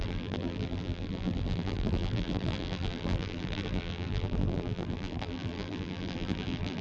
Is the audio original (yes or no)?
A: no